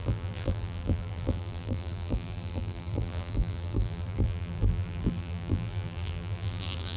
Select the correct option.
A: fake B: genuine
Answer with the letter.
A